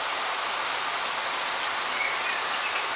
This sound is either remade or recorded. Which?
recorded